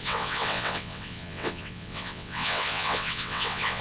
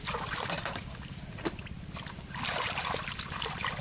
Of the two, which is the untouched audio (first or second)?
second